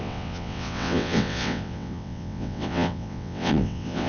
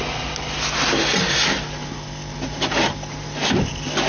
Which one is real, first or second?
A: second